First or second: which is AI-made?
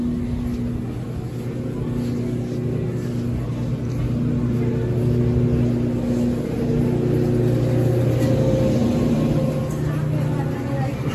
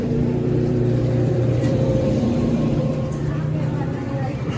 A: second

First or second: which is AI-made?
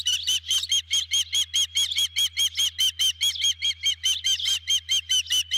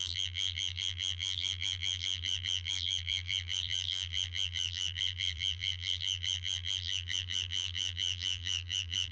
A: second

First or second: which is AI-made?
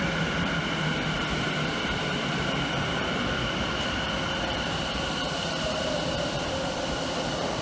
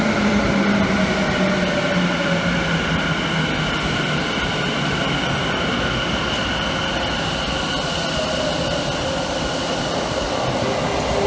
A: first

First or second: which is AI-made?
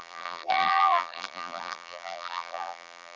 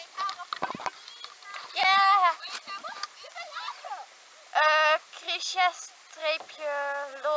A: first